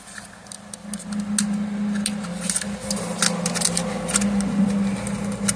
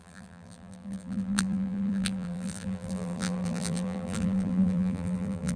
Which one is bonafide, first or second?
first